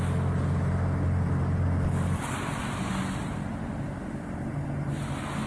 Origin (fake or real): real